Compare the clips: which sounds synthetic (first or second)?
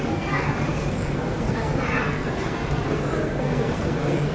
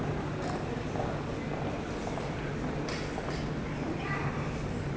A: first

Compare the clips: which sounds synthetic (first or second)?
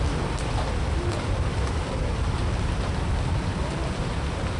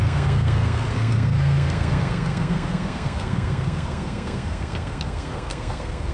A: second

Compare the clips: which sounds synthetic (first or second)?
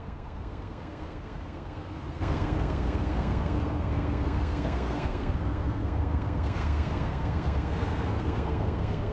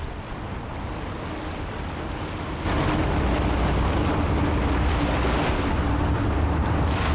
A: first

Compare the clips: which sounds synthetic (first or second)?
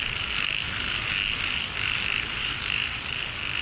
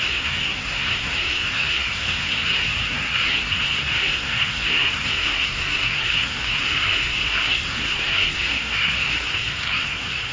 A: second